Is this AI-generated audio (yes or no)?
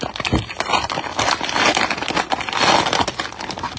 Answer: yes